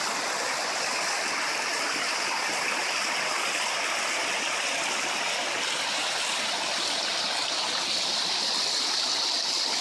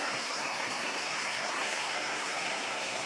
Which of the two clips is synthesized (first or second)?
second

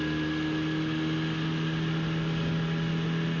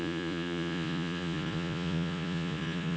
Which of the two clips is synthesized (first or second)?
second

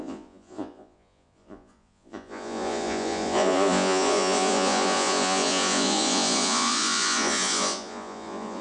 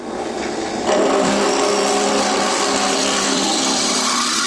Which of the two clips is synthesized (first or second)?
first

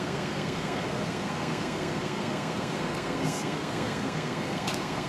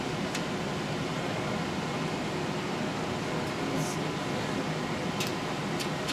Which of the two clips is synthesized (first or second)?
first